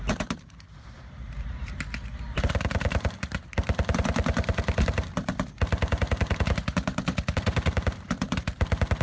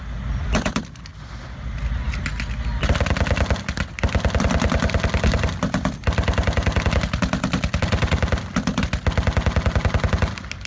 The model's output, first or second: first